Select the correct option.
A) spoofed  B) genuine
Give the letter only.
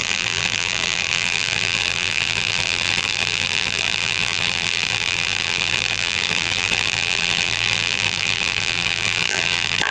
A